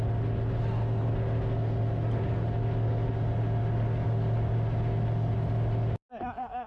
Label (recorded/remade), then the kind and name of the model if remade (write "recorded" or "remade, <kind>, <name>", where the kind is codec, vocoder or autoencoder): recorded